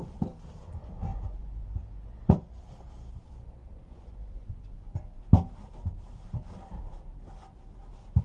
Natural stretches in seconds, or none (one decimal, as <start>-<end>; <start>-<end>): 0.0-1.1; 2.5-3.6; 5.2-8.2